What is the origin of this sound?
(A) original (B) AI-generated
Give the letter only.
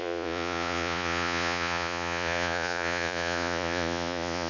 B